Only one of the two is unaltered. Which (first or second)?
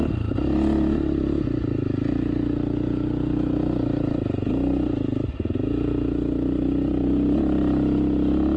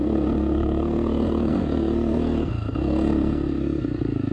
first